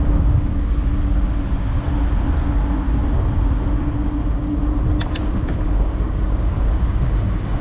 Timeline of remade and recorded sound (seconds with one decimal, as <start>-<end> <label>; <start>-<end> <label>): 0.0-0.9 remade; 0.9-5.5 recorded; 5.5-7.6 remade